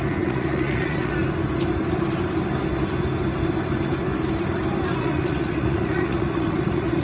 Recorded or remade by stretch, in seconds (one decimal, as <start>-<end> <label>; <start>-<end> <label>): 0.0-1.1 remade; 1.1-5.0 recorded; 5.0-7.0 remade